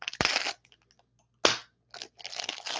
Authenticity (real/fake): real